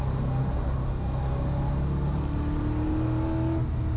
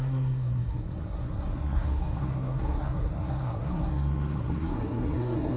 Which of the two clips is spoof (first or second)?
second